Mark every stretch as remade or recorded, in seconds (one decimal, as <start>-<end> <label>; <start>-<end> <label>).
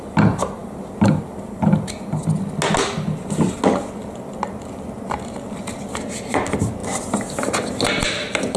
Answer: 0.0-8.6 recorded